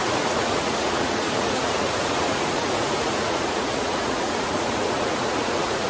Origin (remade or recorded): remade